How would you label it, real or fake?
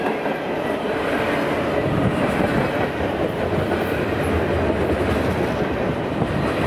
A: real